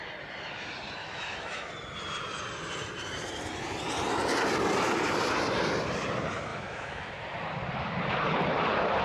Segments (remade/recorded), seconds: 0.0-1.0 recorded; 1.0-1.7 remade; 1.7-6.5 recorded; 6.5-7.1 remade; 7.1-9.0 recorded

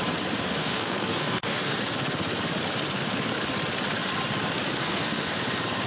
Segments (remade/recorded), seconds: 0.0-0.6 recorded; 0.6-1.8 remade; 1.8-4.8 recorded; 4.8-5.4 remade; 5.4-5.9 recorded